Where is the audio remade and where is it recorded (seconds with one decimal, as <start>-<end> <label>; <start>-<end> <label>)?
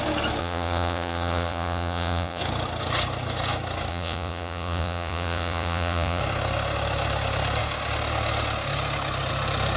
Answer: 0.0-0.4 recorded; 0.4-2.4 remade; 2.4-3.9 recorded; 3.9-6.2 remade; 6.2-9.8 recorded